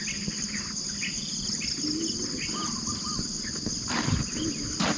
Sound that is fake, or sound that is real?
real